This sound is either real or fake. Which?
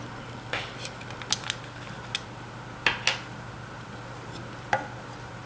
real